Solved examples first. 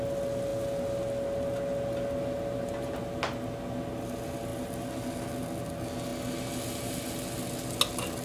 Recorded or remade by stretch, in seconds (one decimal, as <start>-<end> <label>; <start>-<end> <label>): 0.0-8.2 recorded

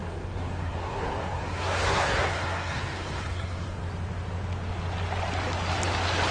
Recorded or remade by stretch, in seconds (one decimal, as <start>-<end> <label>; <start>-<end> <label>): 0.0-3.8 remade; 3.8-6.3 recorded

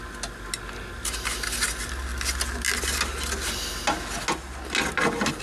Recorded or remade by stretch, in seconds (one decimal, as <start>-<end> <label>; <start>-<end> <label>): 0.0-5.4 recorded